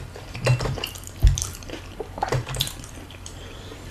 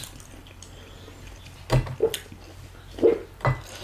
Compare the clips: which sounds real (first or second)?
second